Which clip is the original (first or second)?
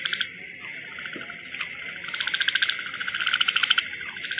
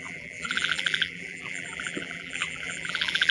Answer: first